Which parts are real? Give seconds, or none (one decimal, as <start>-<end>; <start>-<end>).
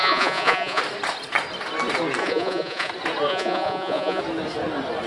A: 0.8-2.2; 2.9-3.3; 4.2-5.1